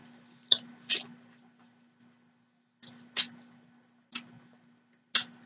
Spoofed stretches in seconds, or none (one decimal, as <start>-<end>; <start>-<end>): none